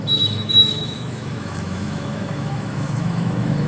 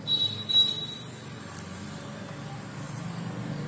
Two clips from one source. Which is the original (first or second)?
second